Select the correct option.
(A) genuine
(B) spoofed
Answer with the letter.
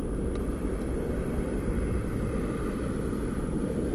A